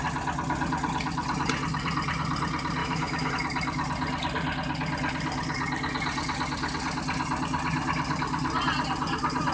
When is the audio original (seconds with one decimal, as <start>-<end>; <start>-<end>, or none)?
0.0-2.8; 3.3-9.5